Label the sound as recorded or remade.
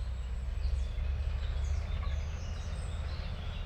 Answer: recorded